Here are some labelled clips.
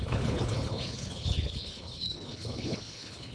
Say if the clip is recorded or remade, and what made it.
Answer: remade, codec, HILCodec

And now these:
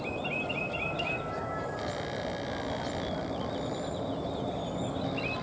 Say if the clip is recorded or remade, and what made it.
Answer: recorded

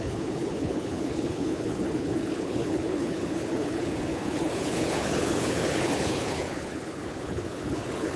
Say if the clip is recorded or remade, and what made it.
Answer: remade, codec, HILCodec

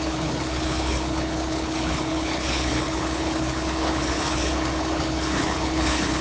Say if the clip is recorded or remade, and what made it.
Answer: remade, codec, HILCodec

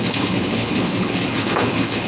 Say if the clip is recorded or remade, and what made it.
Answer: remade, codec, HILCodec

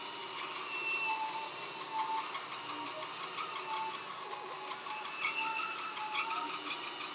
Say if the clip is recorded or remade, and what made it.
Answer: recorded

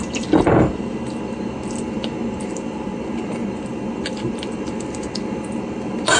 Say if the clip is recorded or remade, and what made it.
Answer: recorded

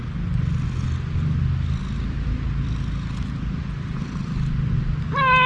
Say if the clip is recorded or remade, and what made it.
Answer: recorded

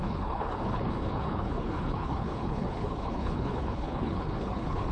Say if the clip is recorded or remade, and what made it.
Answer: remade, codec, HILCodec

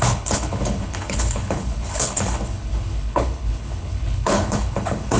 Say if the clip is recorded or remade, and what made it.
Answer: remade, codec, HILCodec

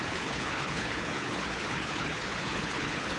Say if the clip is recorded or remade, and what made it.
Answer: remade, codec, HILCodec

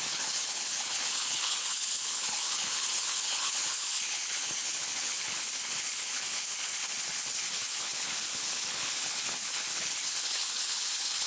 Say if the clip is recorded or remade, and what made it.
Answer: remade, codec, HILCodec